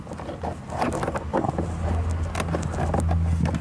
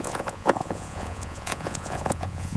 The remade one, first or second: second